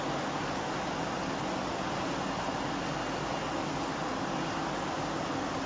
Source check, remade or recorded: recorded